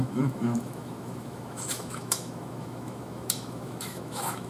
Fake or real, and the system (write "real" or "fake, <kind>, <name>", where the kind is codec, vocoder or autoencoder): fake, autoencoder, DAC-VAE